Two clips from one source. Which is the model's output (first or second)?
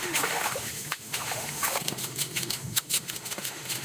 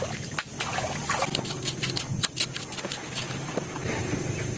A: first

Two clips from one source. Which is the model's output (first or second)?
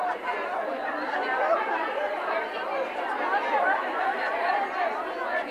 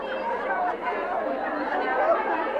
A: first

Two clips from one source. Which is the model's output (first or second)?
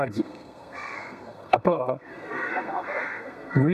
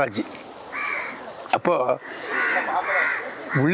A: first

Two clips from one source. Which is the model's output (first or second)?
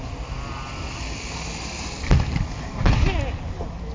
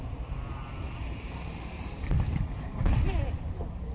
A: second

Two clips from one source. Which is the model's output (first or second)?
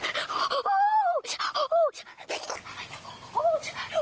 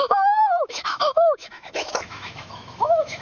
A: second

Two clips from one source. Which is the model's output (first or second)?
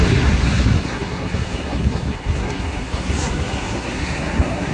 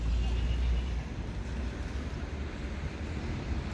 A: first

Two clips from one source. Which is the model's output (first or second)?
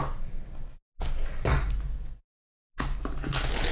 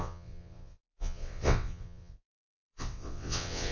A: second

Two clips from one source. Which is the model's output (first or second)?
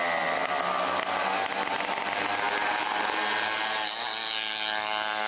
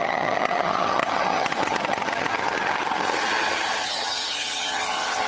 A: second